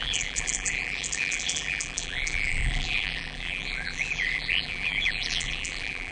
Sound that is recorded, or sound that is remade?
remade